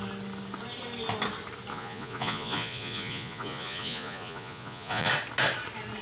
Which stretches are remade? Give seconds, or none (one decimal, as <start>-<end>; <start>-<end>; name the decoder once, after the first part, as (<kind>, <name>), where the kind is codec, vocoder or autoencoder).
1.7-5.1 (vocoder, Vocos)